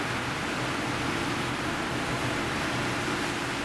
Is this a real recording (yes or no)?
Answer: yes